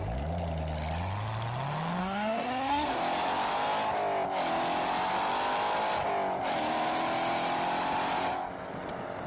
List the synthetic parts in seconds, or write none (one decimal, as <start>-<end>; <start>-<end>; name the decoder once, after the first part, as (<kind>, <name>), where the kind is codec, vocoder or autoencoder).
2.0-3.0 (codec, SNAC)